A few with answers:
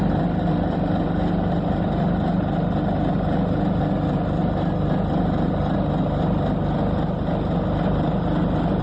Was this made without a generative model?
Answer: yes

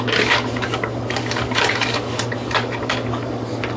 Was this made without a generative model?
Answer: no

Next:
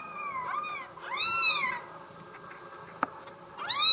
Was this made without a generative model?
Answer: yes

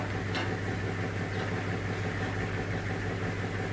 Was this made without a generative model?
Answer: yes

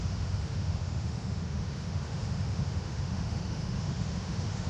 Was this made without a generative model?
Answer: no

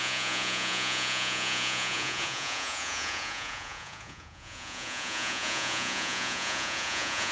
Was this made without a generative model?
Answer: no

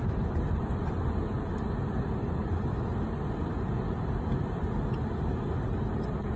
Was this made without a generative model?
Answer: yes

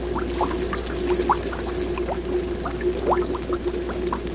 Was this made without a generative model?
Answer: yes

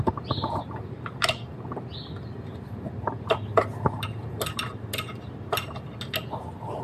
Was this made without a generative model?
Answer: yes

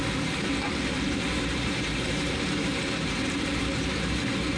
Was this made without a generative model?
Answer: no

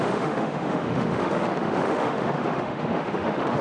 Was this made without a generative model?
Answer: no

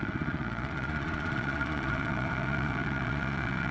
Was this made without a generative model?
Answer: no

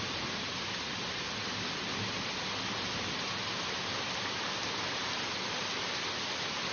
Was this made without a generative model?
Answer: yes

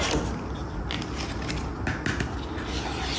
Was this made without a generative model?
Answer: yes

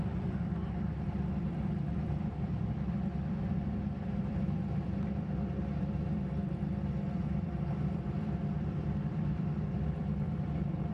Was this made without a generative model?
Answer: no